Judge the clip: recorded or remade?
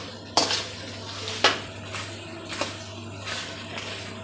recorded